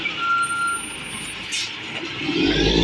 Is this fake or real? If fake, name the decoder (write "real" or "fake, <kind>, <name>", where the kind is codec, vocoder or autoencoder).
real